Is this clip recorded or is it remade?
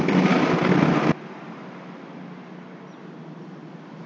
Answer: recorded